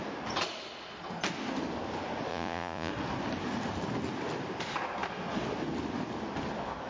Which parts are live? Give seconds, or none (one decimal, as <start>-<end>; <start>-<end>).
0.0-2.3; 2.9-6.9

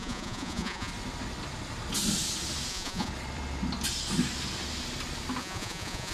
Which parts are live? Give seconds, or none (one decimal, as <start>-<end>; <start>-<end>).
0.9-2.7; 3.1-5.4

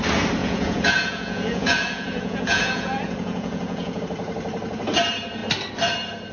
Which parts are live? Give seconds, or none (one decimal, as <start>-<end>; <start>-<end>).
0.0-0.4; 4.0-6.3

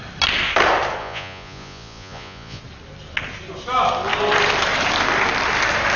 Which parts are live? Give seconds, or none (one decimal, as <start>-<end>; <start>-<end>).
0.0-1.0; 2.6-6.0